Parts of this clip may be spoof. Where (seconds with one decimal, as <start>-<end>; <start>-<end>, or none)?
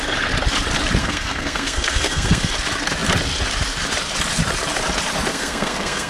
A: 1.0-2.5; 5.3-6.1